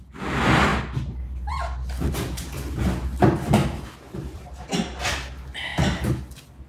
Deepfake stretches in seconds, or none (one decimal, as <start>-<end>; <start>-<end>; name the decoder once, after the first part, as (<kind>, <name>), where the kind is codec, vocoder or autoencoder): 3.6-4.4 (vocoder, BigVGAN v2)